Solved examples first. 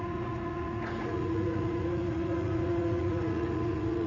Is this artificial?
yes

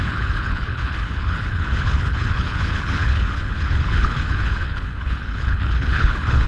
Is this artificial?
yes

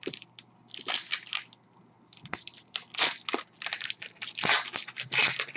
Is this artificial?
no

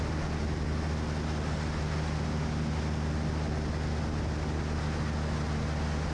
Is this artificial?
no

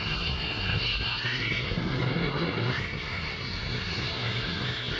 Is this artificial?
yes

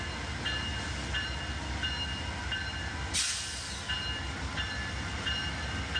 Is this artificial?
no